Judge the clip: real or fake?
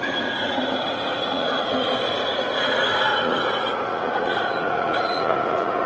fake